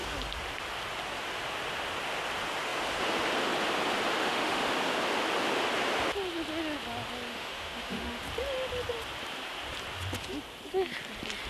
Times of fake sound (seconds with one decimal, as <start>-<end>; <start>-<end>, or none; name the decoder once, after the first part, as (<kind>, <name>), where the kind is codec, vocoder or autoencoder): 4.2-4.7 (autoencoder, DAC-VAE); 7.3-8.2